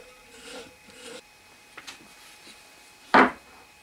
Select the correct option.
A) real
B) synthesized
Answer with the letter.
B